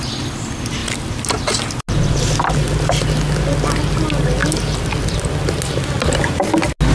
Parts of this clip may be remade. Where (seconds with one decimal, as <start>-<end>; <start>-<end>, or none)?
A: none